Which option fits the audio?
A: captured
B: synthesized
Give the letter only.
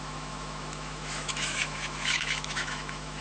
B